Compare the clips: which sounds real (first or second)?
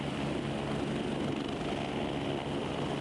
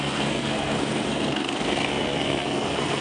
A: first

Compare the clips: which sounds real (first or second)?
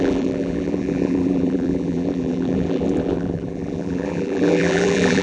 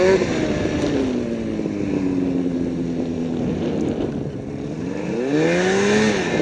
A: second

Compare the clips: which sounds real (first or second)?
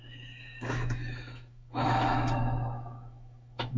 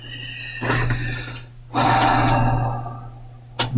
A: second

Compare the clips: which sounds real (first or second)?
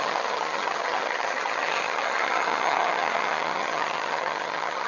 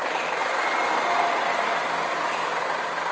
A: second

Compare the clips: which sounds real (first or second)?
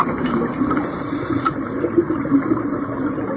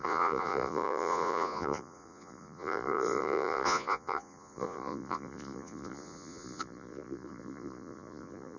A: first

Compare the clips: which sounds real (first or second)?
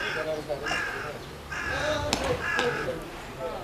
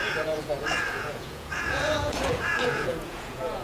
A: first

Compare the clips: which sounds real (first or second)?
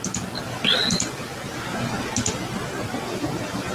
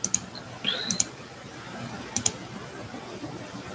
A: first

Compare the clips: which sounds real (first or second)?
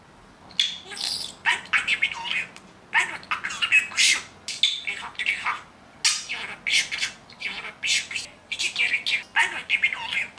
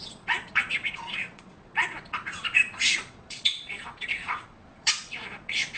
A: first